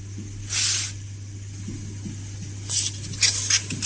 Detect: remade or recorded recorded